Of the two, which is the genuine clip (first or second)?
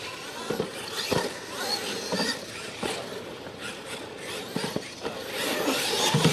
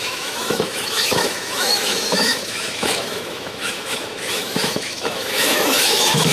first